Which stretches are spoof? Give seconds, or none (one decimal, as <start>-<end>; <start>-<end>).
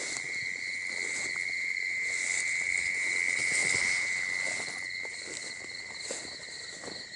none